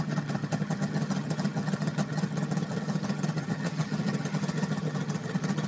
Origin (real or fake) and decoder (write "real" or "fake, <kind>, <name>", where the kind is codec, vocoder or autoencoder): fake, vocoder, HiFi-GAN